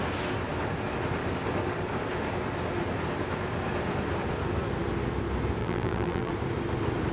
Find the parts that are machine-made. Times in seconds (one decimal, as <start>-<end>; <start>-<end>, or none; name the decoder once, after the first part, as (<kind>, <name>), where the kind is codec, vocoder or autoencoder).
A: 5.6-6.3 (vocoder, BigVGAN v2)